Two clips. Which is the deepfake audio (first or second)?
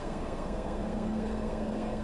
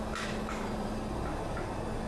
first